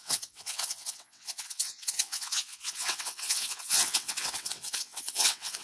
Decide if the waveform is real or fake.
fake